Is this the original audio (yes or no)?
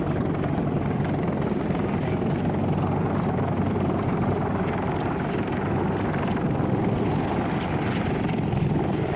yes